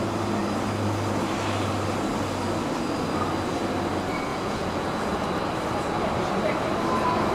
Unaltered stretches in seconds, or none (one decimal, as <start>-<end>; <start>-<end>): 0.0-4.3; 5.3-7.3